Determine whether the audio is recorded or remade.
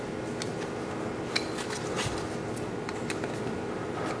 recorded